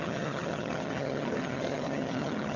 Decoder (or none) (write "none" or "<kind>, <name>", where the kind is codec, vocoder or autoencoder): vocoder, HiFi-GAN